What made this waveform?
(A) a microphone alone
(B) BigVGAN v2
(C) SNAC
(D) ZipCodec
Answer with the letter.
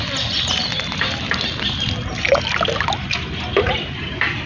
A